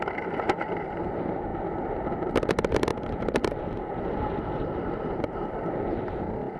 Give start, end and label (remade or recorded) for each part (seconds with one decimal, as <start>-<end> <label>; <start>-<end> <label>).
0.0-6.6 recorded